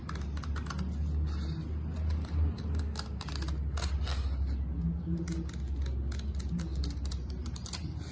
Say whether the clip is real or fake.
real